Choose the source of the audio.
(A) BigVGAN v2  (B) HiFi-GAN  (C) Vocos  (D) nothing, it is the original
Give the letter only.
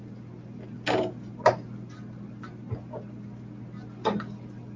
D